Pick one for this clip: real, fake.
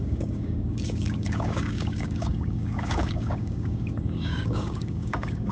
fake